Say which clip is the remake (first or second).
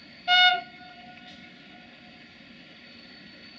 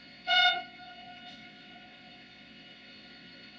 second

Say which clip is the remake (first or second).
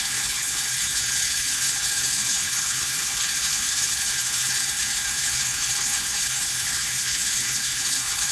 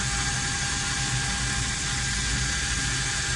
first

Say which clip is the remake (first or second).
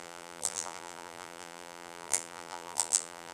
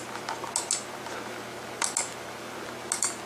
first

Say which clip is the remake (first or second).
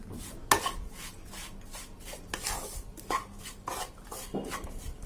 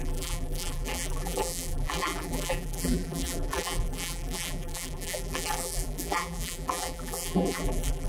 second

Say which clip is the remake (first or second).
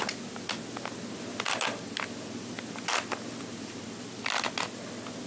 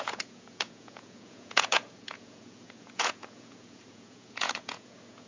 second